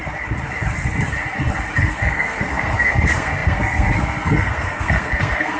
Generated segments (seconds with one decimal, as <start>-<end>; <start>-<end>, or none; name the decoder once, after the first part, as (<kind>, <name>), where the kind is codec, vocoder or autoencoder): 1.8-5.6 (codec, SNAC)